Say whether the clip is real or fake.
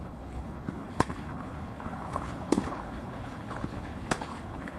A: fake